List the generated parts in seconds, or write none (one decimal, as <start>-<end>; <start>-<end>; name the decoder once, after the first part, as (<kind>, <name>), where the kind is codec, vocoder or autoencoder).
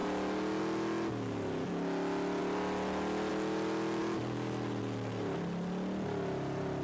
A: none